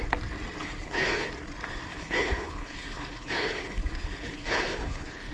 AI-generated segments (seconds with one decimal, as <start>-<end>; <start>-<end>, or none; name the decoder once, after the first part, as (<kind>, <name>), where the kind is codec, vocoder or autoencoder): 0.6-1.3 (codec, HILCodec); 1.9-5.3